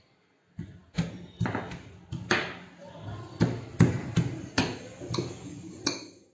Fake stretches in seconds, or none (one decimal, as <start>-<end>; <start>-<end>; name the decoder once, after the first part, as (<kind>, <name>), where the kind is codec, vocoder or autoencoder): none